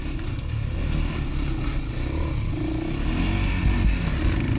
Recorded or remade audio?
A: recorded